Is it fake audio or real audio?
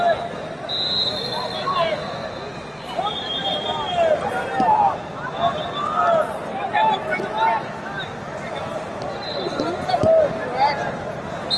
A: real